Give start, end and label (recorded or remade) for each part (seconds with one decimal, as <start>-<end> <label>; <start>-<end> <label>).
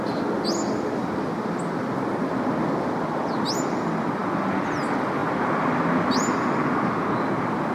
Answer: 0.0-7.7 recorded